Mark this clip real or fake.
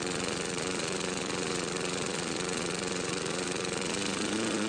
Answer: fake